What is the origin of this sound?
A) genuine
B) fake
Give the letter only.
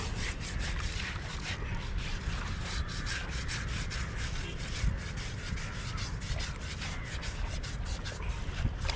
A